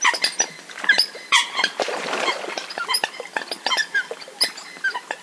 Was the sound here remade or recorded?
recorded